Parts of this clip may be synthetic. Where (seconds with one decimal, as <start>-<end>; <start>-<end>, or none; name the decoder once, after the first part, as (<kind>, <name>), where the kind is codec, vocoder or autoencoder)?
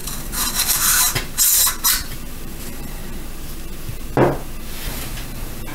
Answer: 0.0-3.0 (vocoder, BigVGAN v2); 4.9-5.7